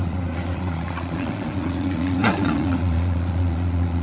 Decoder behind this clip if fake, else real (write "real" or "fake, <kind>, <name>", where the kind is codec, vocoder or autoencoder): fake, vocoder, Vocos